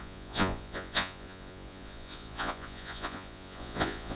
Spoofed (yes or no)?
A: yes